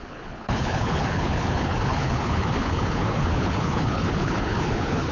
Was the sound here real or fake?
fake